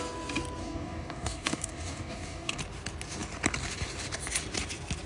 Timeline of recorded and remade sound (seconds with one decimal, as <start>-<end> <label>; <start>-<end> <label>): 0.0-0.6 recorded; 0.6-2.6 remade; 2.6-5.1 recorded